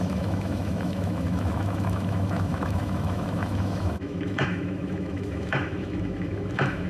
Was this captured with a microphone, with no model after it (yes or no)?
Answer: no